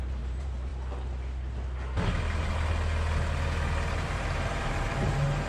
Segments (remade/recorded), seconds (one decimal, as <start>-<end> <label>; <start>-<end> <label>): 0.0-0.7 remade; 0.7-4.0 recorded; 4.0-5.5 remade